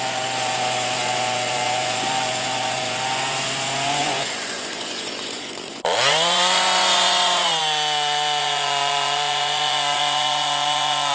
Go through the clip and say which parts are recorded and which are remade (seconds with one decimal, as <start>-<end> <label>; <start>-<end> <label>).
0.0-7.6 remade; 7.6-8.4 recorded; 8.4-11.1 remade